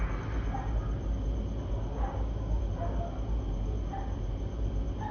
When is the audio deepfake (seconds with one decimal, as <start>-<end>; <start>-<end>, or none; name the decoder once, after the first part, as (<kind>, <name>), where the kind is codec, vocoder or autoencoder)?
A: 1.9-2.6 (codec, DAC)